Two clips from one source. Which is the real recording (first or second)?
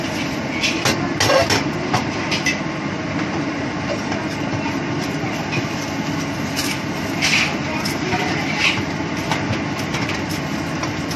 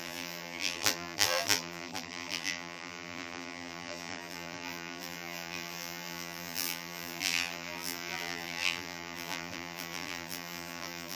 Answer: first